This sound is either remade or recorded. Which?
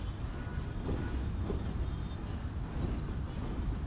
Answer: recorded